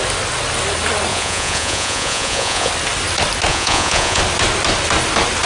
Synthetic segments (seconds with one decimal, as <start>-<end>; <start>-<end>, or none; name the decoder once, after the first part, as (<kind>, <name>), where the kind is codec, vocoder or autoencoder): 1.1-2.7 (vocoder, Vocos); 3.5-4.2